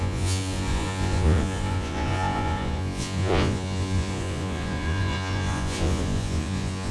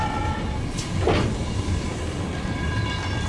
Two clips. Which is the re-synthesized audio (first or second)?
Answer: first